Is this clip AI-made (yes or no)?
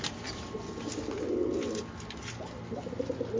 no